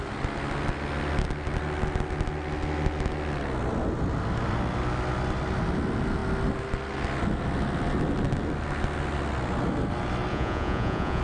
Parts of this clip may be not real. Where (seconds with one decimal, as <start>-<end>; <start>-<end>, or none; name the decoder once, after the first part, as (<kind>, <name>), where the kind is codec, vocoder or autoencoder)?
10.3-11.2 (vocoder, Vocos)